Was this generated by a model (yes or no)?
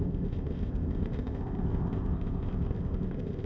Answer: yes